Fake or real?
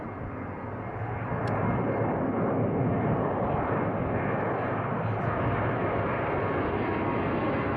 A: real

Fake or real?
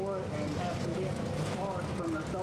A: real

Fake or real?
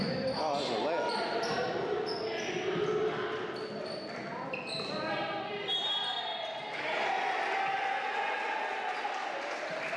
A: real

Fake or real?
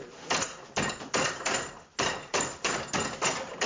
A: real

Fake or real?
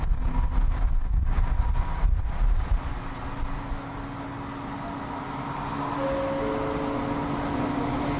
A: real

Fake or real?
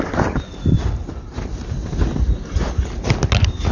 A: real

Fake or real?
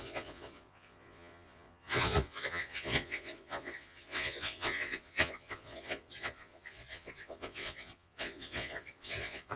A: fake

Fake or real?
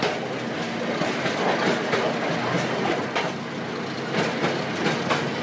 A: real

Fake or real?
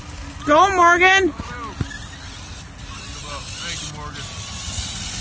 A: real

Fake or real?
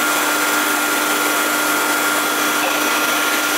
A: real